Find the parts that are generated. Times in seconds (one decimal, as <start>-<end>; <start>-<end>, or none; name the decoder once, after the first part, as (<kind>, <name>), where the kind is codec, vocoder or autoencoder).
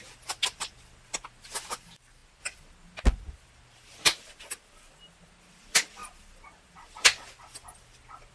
none